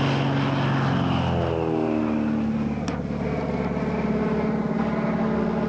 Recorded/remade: recorded